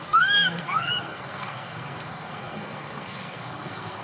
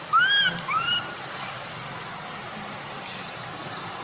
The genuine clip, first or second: second